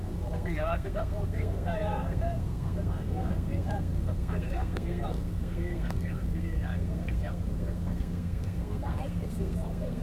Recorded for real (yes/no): no